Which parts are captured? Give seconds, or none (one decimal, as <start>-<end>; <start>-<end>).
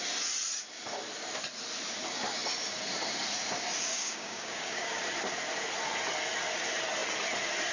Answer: 0.0-3.9; 5.0-7.7